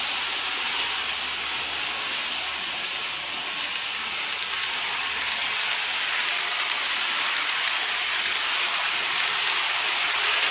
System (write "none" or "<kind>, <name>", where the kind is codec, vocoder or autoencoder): none